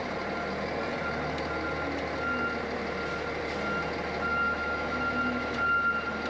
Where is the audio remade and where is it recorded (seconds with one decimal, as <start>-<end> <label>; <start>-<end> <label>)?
0.0-4.3 recorded; 4.3-5.0 remade; 5.0-6.3 recorded